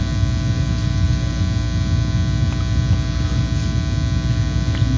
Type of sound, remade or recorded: recorded